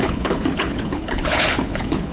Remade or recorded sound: remade